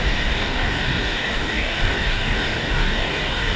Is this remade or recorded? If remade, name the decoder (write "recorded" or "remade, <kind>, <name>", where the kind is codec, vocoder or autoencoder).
remade, codec, DAC